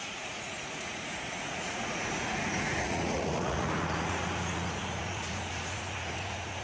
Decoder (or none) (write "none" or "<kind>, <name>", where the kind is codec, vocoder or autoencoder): vocoder, Vocos